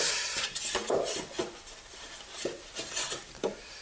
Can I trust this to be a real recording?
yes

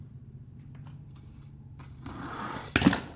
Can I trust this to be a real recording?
yes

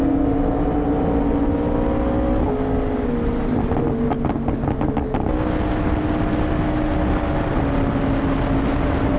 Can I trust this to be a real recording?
yes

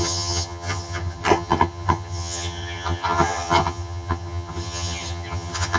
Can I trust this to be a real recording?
no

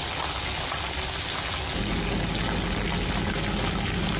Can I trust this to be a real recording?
yes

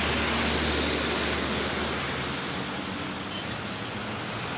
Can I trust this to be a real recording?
yes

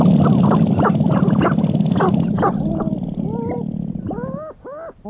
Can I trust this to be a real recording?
yes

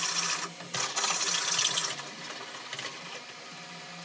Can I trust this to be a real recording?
yes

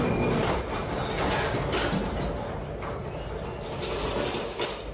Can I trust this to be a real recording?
yes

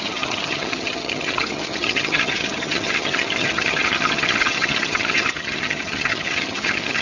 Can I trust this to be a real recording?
no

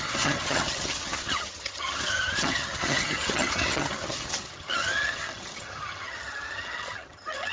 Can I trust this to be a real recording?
no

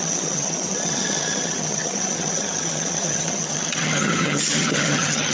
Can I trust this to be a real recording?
no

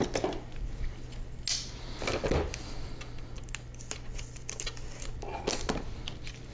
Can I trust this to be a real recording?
yes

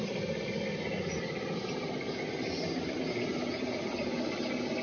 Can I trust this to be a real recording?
yes